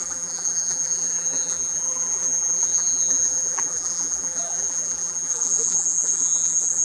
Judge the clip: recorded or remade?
remade